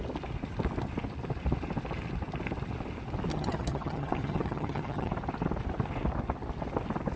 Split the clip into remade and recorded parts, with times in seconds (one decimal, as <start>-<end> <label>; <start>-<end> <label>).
0.0-3.3 recorded; 3.3-5.1 remade; 5.1-7.2 recorded